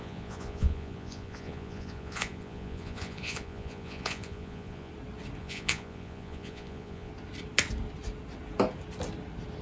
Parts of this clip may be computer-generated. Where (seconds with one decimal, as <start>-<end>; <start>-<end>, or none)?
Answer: 0.0-4.9; 5.4-7.1